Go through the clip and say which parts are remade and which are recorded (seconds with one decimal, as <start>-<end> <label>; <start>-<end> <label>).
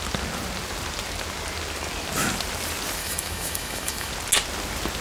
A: 0.0-3.0 recorded; 3.0-4.1 remade; 4.1-5.0 recorded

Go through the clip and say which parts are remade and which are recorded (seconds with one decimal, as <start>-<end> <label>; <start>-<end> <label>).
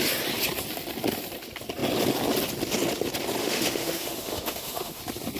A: 0.0-3.4 recorded; 3.4-5.0 remade; 5.0-5.4 recorded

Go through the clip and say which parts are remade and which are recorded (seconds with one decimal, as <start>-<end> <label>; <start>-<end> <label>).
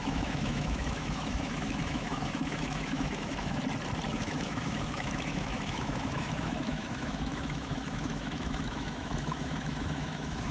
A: 0.0-3.6 remade; 3.6-4.1 recorded; 4.1-10.5 remade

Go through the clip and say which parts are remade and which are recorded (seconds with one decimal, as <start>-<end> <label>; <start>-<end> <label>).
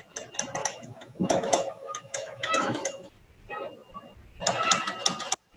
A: 0.0-0.6 recorded; 0.6-3.1 remade; 3.1-5.6 recorded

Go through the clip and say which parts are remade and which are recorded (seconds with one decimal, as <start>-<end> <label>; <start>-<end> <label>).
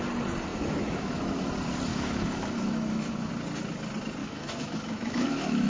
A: 0.0-0.5 recorded; 0.5-1.5 remade; 1.5-1.9 recorded; 1.9-3.3 remade; 3.3-4.2 recorded; 4.2-5.7 remade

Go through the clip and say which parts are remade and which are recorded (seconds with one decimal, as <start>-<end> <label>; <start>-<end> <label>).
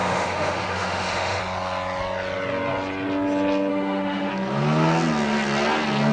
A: 0.0-1.4 remade; 1.4-3.7 recorded; 3.7-4.3 remade; 4.3-6.1 recorded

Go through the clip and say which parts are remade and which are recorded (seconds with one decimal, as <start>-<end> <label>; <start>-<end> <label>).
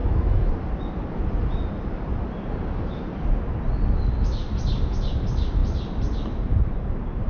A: 0.0-0.5 remade; 0.5-7.3 recorded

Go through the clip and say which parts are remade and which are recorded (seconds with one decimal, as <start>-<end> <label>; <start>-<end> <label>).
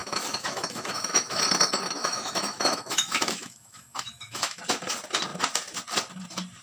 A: 0.0-1.4 remade; 1.4-2.0 recorded; 2.0-4.6 remade; 4.6-6.6 recorded